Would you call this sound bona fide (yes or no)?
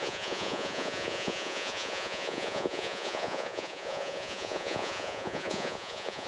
no